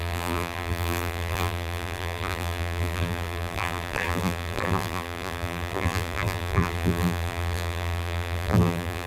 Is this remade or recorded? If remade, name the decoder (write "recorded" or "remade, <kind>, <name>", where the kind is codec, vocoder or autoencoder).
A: remade, vocoder, BigVGAN v2